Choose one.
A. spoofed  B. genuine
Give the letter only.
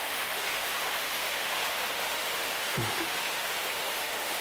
A